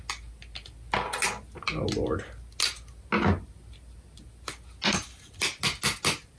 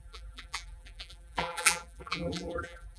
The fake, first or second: second